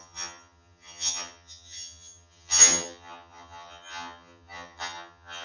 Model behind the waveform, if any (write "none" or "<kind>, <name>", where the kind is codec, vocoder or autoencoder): vocoder, HiFi-GAN